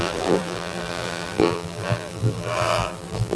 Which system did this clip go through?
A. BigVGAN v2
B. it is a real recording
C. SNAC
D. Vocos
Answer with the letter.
A